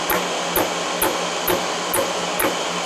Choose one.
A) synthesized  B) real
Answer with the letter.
B